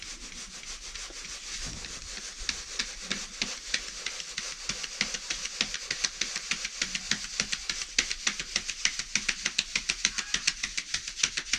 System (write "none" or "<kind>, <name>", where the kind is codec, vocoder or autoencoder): none